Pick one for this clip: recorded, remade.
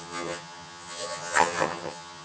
remade